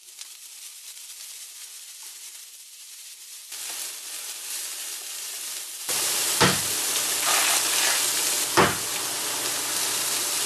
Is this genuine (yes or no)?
yes